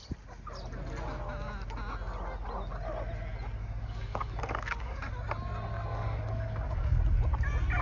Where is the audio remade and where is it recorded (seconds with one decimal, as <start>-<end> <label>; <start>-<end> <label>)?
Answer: 0.0-3.6 recorded; 3.6-5.1 remade; 5.1-5.9 recorded; 5.9-7.0 remade; 7.0-7.8 recorded